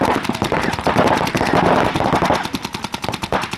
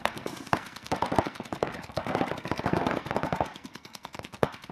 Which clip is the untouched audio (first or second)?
first